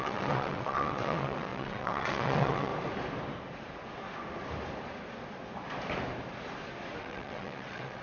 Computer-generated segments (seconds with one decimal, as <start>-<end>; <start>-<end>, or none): 0.0-2.7; 7.0-8.0